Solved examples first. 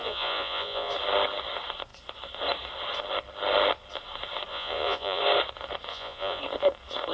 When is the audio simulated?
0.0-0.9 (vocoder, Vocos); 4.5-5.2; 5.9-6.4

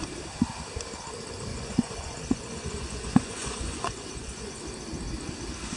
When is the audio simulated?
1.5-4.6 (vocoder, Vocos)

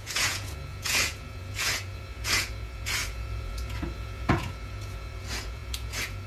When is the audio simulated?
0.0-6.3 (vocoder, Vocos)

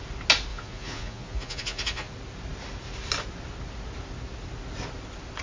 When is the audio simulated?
0.5-2.1 (vocoder, Vocos)

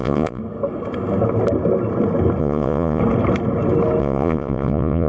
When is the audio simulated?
0.0-0.4 (vocoder, Vocos); 2.4-3.0; 4.0-5.1

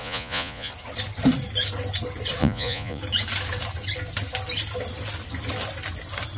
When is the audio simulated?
0.0-0.7 (vocoder, Vocos); 2.4-3.0

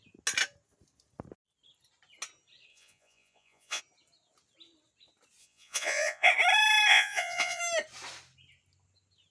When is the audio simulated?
2.7-3.8 (vocoder, Vocos); 5.4-6.3; 6.9-7.6